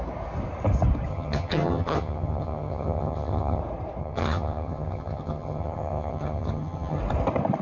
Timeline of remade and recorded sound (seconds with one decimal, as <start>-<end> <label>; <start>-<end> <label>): 0.0-1.1 recorded; 1.1-3.6 remade; 3.6-4.0 recorded; 4.0-7.0 remade; 7.0-7.6 recorded